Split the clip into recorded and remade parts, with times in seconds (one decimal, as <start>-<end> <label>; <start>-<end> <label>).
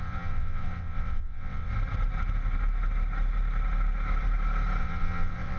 0.0-1.7 remade; 1.7-4.8 recorded; 4.8-5.6 remade